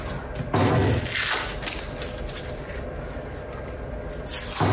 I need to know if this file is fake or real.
real